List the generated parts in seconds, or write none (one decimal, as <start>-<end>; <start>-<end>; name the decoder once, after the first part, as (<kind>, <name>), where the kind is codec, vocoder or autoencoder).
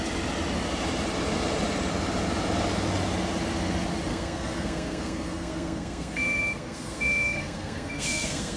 4.1-8.6 (codec, SNAC)